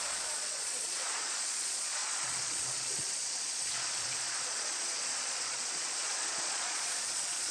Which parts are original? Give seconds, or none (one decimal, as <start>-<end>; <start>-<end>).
none